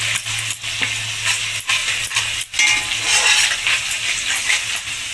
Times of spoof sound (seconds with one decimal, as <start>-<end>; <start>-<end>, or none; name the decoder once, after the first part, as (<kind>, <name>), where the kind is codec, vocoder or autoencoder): none